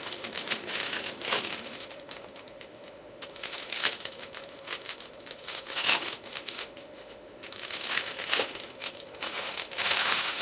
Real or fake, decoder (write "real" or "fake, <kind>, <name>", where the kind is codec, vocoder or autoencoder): fake, autoencoder, DAC-VAE